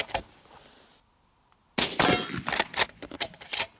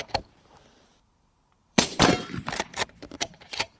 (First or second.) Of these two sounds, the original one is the first